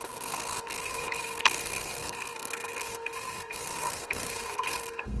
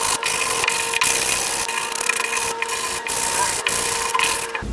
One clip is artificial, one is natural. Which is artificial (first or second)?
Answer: first